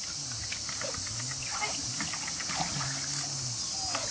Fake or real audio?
real